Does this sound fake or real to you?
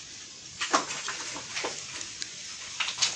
real